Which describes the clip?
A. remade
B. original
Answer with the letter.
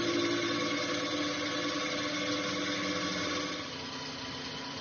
B